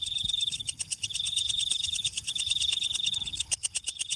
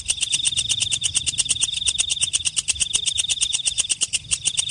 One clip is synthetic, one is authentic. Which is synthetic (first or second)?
first